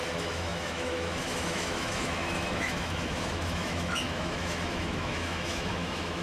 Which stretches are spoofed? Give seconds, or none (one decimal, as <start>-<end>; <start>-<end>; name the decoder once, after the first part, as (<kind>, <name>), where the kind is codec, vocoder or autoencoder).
0.0-6.2 (autoencoder, DAC-VAE)